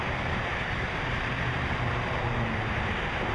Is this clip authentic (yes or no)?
no